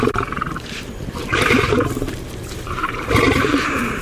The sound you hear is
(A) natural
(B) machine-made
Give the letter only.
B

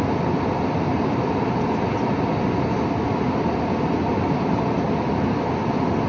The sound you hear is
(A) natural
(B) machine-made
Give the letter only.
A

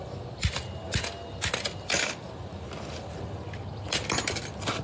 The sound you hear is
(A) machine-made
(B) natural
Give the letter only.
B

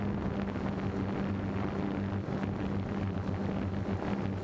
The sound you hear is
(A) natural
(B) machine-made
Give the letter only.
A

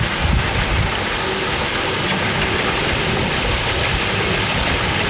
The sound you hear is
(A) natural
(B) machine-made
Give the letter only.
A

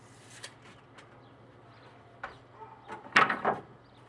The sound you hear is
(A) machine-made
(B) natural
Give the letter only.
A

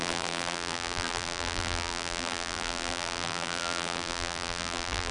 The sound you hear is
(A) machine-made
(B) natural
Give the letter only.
A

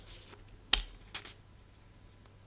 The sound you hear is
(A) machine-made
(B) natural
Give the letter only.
B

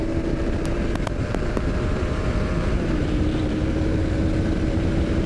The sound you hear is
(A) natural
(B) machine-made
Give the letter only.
B